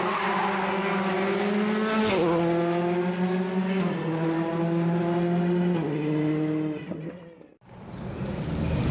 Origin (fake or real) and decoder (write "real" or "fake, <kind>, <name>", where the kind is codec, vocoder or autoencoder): real